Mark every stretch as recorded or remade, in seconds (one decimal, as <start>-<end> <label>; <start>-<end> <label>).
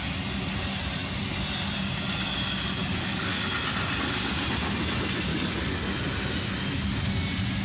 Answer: 0.0-2.8 recorded; 2.8-3.5 remade; 3.5-5.3 recorded; 5.3-5.9 remade; 5.9-7.6 recorded